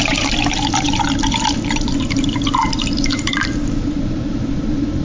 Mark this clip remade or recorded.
remade